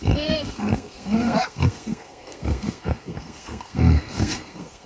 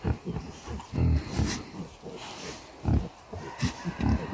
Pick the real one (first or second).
second